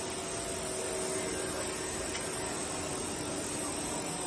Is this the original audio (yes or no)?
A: yes